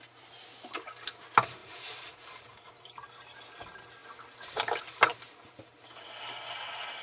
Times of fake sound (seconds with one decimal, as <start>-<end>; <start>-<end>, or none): 1.6-2.7